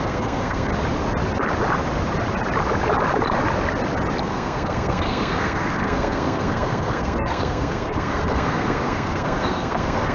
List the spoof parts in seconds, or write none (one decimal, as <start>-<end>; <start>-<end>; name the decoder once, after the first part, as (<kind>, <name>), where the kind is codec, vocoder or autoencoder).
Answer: 0.0-0.7 (codec, SNAC); 4.2-10.1